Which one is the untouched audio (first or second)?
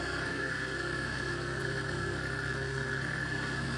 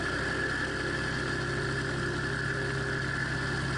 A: second